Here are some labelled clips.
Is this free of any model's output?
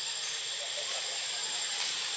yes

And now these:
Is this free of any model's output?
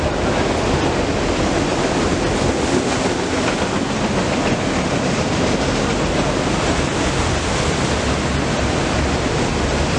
yes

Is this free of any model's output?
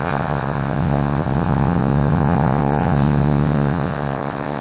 no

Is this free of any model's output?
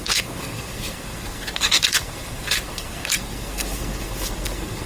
no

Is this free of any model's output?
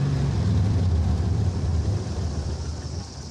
no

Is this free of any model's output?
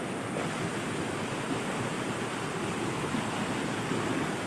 yes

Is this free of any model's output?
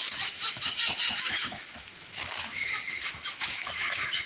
no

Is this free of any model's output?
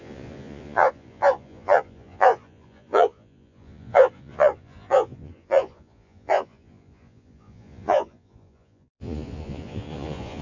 no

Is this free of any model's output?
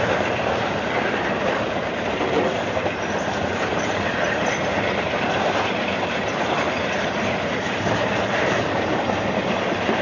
no